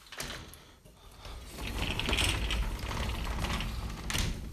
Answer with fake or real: real